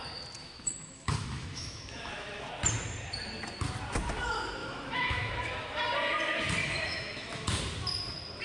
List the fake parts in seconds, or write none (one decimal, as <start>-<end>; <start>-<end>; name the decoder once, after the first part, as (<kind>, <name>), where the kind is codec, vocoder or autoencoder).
0.4-2.4 (autoencoder, DAC-VAE); 4.6-5.8; 6.6-7.6